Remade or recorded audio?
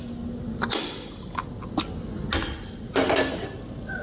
recorded